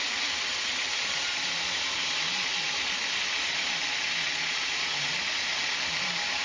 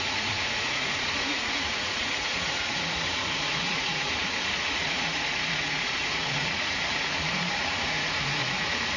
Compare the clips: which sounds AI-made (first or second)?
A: second